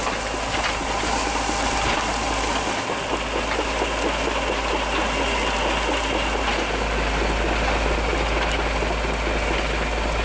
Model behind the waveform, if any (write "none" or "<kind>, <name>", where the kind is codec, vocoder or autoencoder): none